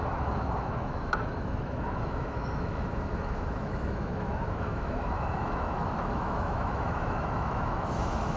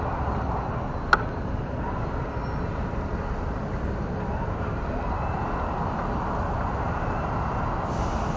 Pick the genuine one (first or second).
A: second